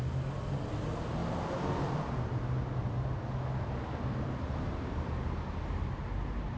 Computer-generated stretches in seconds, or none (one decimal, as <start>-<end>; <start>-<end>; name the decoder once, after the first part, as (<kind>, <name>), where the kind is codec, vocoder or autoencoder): none